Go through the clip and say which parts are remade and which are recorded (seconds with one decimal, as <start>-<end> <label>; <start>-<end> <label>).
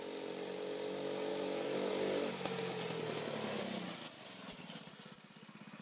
0.0-1.3 recorded; 1.3-1.9 remade; 1.9-5.8 recorded